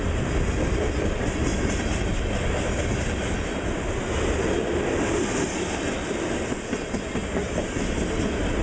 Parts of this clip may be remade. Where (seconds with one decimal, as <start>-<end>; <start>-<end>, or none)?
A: none